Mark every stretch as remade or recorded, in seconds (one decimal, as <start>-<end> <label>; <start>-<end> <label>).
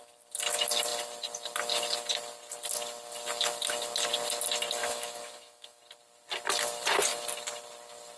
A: 0.0-4.8 recorded; 4.8-5.8 remade; 5.8-8.2 recorded